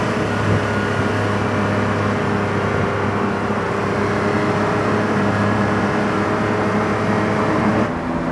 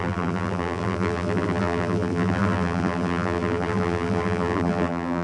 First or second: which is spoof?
second